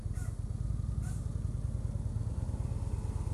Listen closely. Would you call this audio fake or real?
real